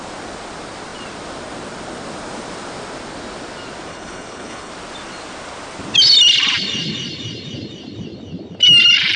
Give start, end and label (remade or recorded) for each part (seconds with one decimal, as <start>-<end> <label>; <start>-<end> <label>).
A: 0.0-3.9 recorded; 3.9-4.7 remade; 4.7-9.2 recorded